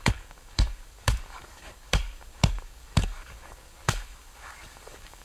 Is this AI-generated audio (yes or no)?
yes